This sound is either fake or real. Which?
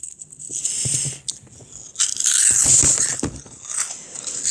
real